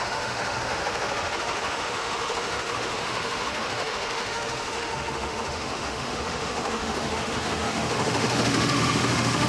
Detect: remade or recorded remade